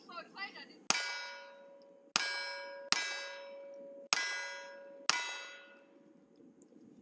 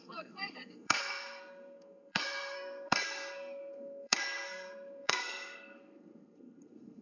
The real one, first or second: first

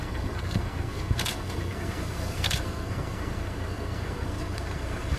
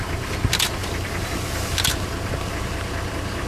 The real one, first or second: second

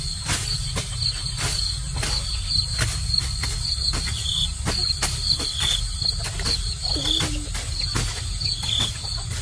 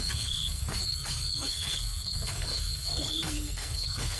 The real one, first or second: first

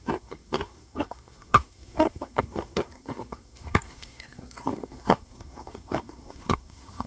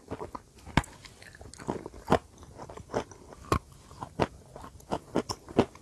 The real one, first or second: second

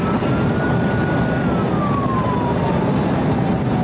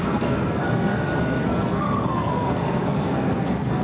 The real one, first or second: first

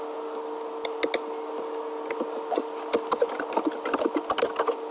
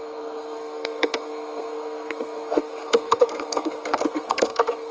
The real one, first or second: first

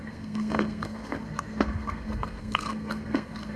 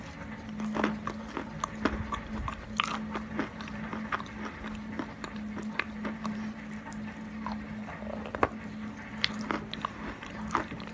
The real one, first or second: second